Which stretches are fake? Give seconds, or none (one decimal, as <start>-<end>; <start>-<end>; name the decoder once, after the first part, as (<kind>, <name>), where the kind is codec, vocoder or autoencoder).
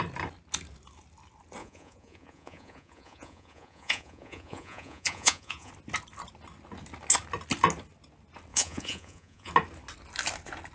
1.6-5.7 (vocoder, Vocos); 8.5-9.5